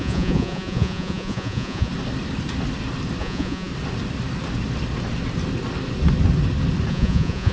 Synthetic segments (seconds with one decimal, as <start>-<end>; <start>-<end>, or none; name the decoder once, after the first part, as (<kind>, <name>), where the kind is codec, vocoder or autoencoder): 0.0-1.9 (vocoder, Vocos); 3.2-3.7; 6.9-7.5